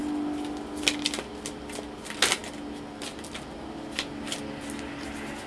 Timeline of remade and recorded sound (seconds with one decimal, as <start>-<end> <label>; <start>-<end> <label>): 0.0-5.5 recorded